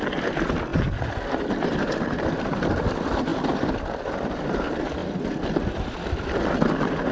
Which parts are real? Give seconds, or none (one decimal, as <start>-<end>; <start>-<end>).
0.0-7.1